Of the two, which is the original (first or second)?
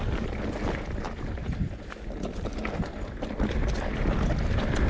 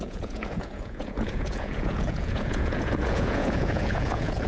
first